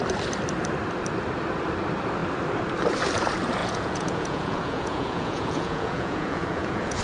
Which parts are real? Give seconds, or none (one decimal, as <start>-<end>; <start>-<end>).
0.0-3.6